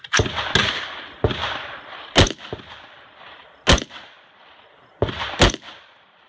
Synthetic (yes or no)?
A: no